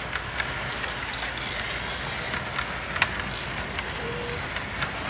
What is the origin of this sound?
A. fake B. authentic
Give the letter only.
B